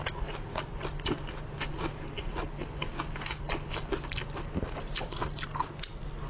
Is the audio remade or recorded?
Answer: recorded